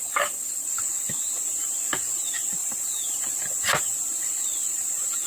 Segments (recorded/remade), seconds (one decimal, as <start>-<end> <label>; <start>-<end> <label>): 0.0-2.6 recorded; 2.6-3.4 remade; 3.4-5.3 recorded